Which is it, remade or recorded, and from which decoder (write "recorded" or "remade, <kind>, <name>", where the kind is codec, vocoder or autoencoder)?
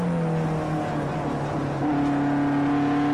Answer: recorded